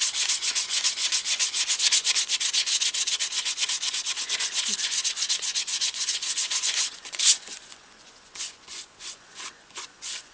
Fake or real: fake